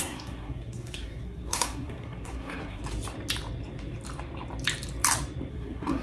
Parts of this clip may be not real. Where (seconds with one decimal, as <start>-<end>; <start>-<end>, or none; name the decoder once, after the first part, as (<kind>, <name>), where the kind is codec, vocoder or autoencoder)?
0.0-2.8 (codec, SNAC); 5.5-6.0